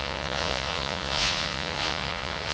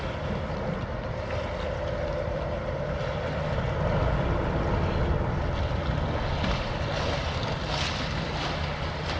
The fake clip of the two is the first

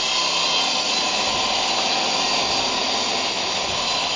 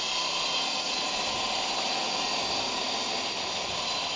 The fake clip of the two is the second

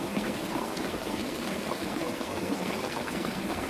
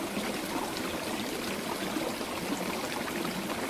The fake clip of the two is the first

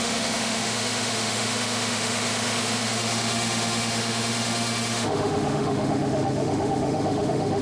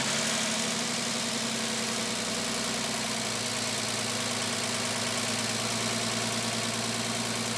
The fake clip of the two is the first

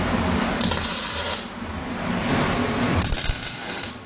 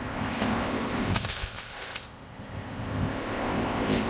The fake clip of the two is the second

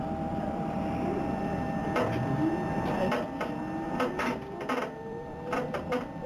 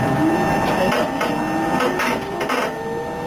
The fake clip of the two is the first